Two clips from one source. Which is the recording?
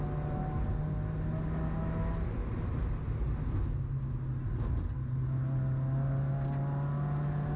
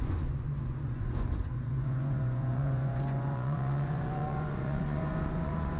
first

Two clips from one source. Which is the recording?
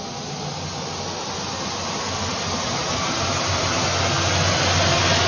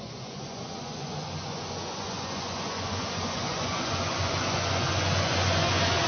first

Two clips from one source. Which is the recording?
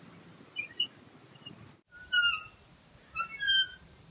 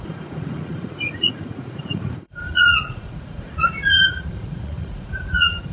first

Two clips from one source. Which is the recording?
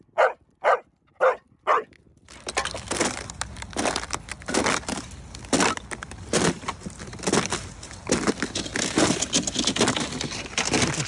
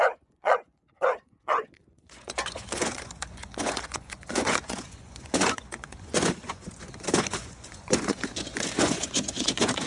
first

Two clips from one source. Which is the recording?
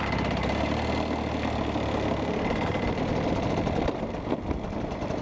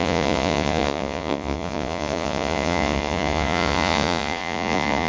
first